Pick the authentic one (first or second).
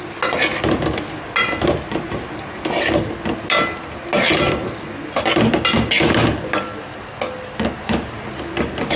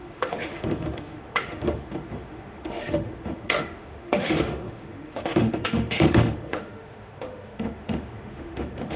first